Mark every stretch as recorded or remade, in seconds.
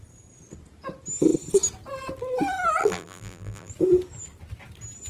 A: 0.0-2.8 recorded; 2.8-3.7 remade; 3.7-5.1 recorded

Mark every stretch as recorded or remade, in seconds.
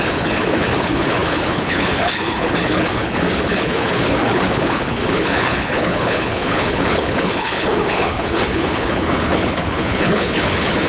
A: 0.0-10.9 remade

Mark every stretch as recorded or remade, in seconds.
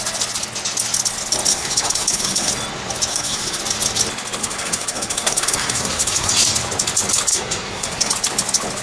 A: 0.0-1.5 recorded; 1.5-2.5 remade; 2.5-3.1 recorded; 3.1-3.6 remade; 3.6-4.4 recorded; 4.4-6.3 remade; 6.3-7.3 recorded; 7.3-8.1 remade; 8.1-8.8 recorded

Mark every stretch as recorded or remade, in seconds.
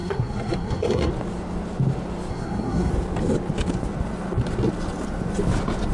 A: 0.0-1.1 remade; 1.1-2.3 recorded; 2.3-2.9 remade; 2.9-5.9 recorded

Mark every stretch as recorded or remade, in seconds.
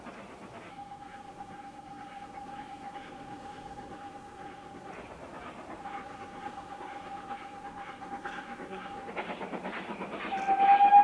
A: 0.0-0.7 recorded; 0.7-4.9 remade; 4.9-5.8 recorded; 5.8-9.1 remade; 9.1-11.0 recorded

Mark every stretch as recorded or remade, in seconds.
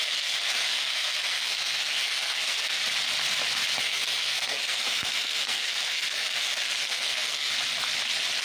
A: 0.0-2.8 remade; 2.8-3.8 recorded; 3.8-7.5 remade; 7.5-8.4 recorded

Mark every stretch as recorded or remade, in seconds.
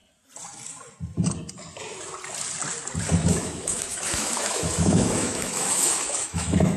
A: 0.0-3.3 recorded; 3.3-6.8 remade